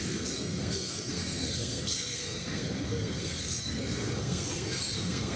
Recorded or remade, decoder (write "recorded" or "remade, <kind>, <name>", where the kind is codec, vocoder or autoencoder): remade, codec, SNAC